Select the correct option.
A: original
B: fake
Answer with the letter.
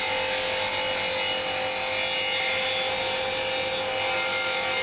A